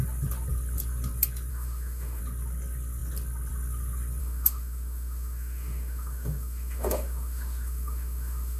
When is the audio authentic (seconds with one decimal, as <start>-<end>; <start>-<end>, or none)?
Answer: 0.0-1.5; 2.2-4.2